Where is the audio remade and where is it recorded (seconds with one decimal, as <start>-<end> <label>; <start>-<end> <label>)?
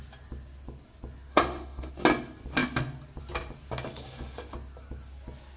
0.0-1.3 recorded; 1.3-1.9 remade; 1.9-5.6 recorded